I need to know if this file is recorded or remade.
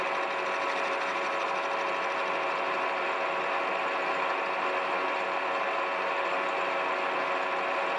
recorded